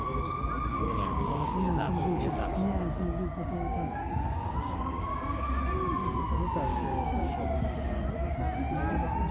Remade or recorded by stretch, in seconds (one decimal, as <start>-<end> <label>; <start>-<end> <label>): 0.0-0.7 recorded; 0.7-5.6 remade; 5.6-6.7 recorded; 6.7-7.3 remade; 7.3-9.3 recorded